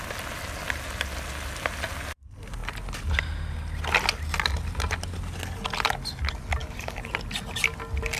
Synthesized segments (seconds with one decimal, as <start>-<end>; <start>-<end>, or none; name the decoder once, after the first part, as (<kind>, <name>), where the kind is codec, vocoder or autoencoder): 6.6-7.1 (codec, DAC)